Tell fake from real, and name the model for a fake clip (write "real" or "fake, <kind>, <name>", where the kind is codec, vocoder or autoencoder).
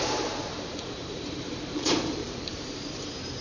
fake, vocoder, BigVGAN v2